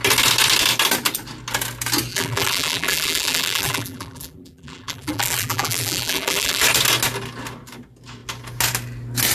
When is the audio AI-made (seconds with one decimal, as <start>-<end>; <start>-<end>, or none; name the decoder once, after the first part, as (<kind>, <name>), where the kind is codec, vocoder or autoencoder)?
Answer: 2.1-6.6 (vocoder, BigVGAN v2)